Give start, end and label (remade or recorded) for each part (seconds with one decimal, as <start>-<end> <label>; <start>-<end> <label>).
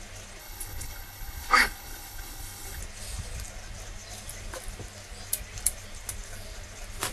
0.0-0.4 recorded; 0.4-2.8 remade; 2.8-7.1 recorded